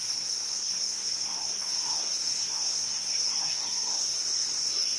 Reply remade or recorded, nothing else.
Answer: remade